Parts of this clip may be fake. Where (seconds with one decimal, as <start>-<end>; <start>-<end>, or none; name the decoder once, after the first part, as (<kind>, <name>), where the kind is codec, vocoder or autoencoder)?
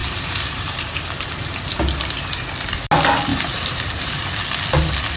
0.0-1.3 (vocoder, BigVGAN v2); 3.3-4.4